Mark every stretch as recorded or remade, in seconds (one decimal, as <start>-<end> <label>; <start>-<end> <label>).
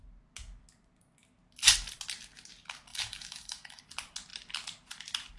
0.0-2.9 recorded; 2.9-3.8 remade; 3.8-5.4 recorded